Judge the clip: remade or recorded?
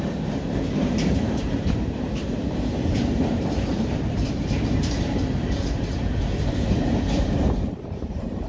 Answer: remade